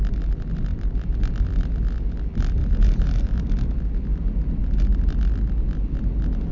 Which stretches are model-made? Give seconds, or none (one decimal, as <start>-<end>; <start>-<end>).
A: 2.6-3.5